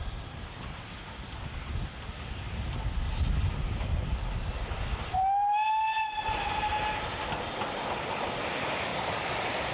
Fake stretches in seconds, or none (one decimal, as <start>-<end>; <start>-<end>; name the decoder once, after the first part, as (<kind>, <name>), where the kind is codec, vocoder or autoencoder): 8.9-9.7 (vocoder, BigVGAN v2)